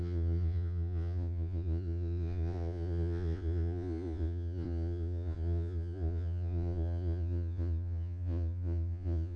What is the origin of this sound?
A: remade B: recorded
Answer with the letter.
A